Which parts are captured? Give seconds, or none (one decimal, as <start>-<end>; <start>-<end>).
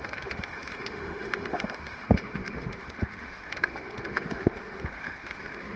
none